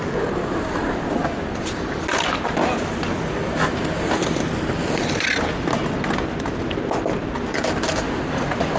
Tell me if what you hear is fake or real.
real